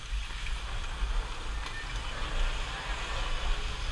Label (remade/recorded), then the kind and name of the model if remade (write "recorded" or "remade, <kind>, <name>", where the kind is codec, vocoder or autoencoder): recorded